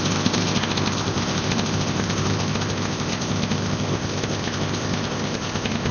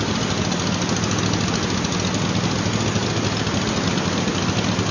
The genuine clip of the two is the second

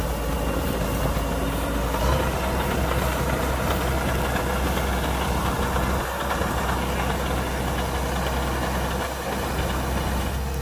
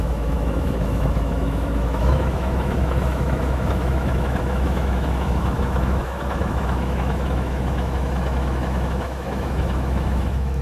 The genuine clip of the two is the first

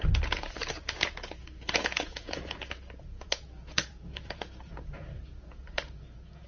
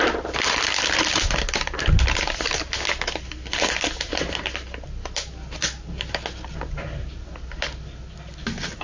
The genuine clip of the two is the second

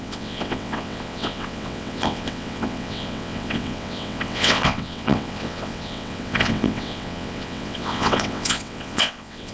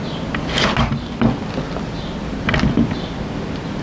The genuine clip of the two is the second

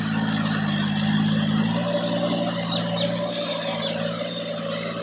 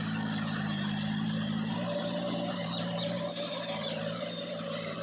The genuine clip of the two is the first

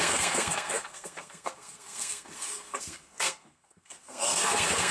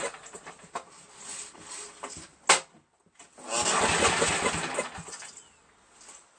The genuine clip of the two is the second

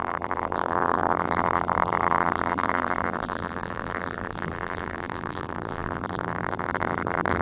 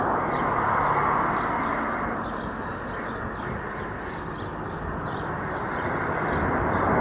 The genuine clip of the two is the second